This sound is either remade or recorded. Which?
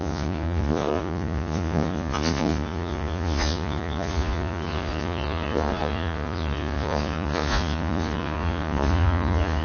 remade